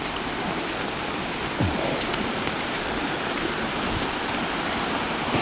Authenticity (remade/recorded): recorded